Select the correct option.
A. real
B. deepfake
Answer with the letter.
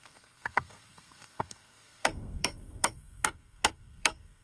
B